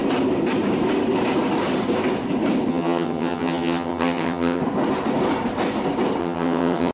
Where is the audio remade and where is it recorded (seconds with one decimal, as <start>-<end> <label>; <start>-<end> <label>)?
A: 0.0-2.7 recorded; 2.7-4.6 remade; 4.6-6.2 recorded; 6.2-6.9 remade